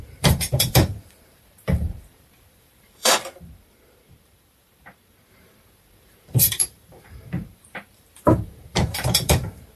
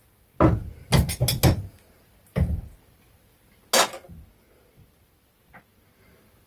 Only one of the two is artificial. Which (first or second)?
first